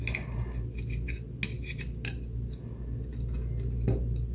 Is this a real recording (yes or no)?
yes